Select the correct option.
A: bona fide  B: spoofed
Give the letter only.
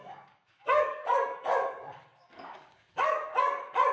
B